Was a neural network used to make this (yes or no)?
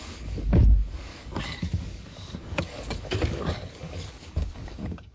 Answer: yes